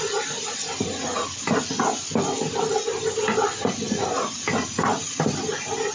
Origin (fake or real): real